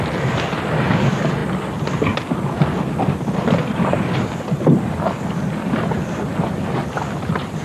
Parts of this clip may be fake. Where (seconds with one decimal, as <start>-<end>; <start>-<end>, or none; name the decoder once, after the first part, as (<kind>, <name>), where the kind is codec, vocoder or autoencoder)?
none